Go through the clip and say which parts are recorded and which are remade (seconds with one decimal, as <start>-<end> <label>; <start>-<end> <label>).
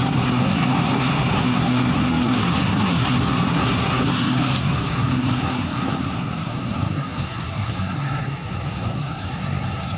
0.0-10.0 remade